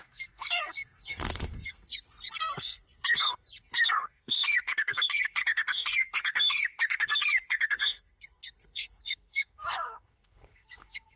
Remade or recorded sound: remade